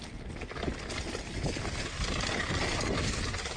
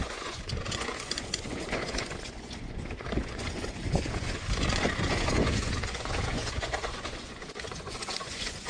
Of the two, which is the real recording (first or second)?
first